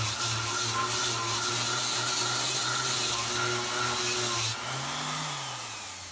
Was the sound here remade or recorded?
recorded